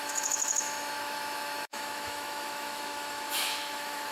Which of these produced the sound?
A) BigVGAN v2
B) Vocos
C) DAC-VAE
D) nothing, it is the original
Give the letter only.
C